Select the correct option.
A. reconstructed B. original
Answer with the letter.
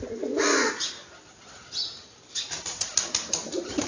B